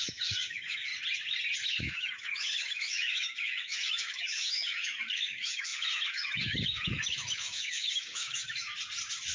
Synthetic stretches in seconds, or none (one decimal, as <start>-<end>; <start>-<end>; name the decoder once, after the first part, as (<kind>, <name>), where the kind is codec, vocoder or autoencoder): 0.0-0.9 (autoencoder, DAC-VAE); 1.8-8.7

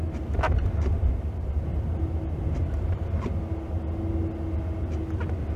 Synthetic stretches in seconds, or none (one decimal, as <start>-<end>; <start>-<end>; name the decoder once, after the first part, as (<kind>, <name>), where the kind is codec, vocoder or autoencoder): none

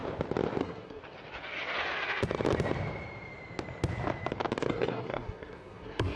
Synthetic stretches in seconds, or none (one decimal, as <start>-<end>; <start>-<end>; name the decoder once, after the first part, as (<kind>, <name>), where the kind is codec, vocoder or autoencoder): 0.6-1.0 (codec, SNAC); 4.7-6.2

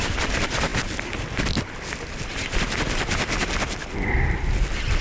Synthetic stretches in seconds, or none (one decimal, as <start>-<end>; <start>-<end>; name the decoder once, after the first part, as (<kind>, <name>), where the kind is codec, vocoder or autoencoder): 0.0-5.0 (vocoder, BigVGAN v2)

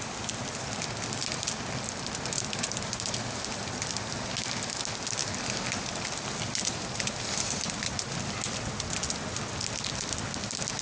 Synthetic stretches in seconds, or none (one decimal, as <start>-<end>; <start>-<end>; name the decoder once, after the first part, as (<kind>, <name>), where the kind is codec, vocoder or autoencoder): none